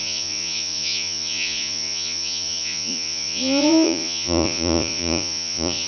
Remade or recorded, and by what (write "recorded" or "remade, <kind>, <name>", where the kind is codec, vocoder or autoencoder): remade, vocoder, Vocos